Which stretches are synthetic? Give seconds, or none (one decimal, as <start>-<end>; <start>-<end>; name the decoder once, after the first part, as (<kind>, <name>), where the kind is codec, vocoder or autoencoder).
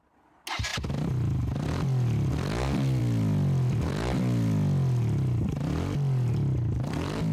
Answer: none